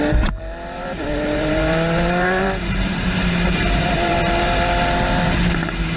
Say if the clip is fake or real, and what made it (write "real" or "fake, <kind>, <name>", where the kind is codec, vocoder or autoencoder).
fake, vocoder, BigVGAN v2